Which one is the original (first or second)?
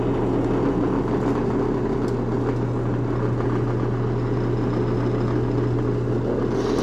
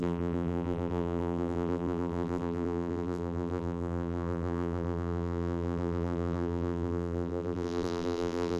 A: first